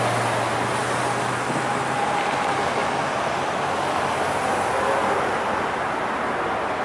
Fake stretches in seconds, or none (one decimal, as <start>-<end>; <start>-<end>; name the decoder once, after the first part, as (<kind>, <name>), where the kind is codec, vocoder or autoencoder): none